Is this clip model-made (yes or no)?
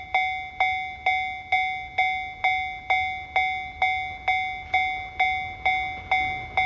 no